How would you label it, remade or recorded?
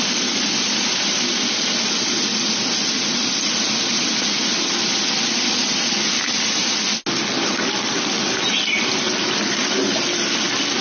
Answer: recorded